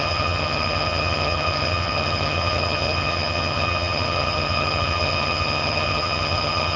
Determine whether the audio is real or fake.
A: fake